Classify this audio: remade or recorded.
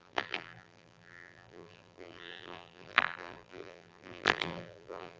remade